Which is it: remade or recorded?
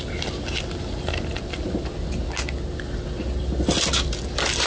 recorded